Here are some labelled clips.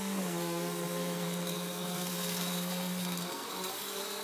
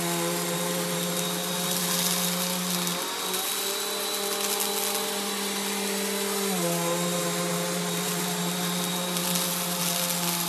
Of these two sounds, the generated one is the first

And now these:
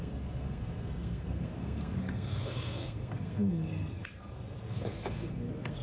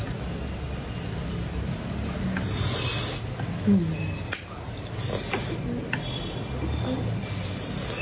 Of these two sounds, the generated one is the first